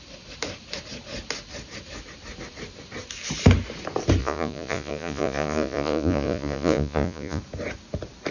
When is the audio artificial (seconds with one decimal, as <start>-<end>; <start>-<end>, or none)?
4.2-7.4